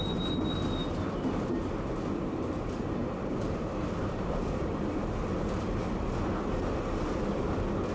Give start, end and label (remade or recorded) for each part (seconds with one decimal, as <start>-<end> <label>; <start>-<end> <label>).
0.0-0.8 recorded; 0.8-1.5 remade; 1.5-3.0 recorded; 3.0-5.8 remade; 5.8-7.9 recorded